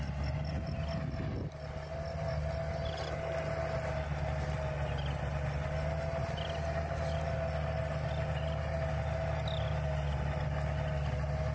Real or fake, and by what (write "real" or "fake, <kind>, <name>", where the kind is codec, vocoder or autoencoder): real